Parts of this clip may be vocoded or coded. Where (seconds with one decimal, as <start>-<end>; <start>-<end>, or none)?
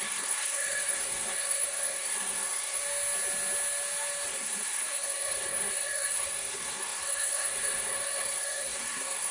0.0-2.8; 4.3-9.3